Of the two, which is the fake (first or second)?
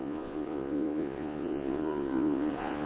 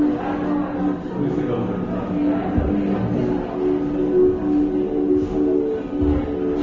first